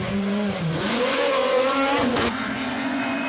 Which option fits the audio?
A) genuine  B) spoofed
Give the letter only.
B